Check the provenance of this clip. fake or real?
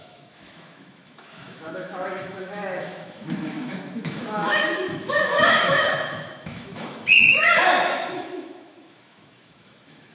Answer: fake